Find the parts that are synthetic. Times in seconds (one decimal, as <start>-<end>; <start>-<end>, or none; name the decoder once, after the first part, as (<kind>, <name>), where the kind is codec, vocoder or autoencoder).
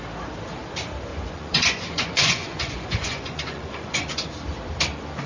1.1-4.3 (vocoder, Vocos)